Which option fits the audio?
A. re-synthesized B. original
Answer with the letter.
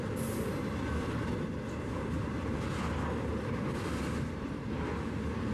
A